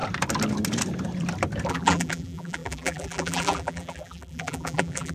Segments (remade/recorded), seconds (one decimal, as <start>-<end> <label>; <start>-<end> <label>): 0.0-1.7 recorded; 1.7-5.1 remade